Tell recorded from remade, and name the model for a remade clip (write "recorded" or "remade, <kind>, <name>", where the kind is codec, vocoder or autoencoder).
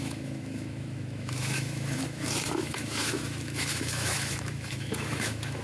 remade, autoencoder, DAC-VAE